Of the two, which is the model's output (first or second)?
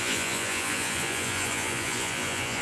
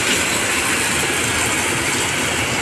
first